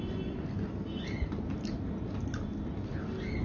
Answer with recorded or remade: recorded